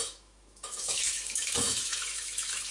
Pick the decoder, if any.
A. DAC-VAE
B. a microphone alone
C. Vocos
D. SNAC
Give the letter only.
A